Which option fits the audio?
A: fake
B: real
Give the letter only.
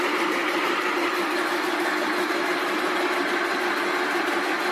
B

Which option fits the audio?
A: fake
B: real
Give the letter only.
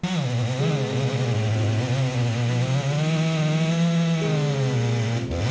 B